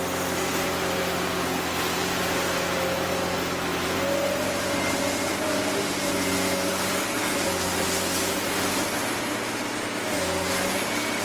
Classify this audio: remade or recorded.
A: recorded